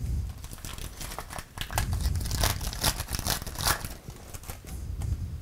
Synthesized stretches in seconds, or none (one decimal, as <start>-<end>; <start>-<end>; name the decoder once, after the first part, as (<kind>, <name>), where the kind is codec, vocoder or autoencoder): none